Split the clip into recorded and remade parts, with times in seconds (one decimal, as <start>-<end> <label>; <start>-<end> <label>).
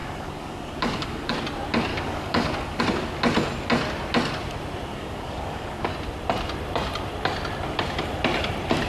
0.0-1.3 remade; 1.3-1.9 recorded; 1.9-2.8 remade; 2.8-4.9 recorded; 4.9-5.9 remade; 5.9-8.9 recorded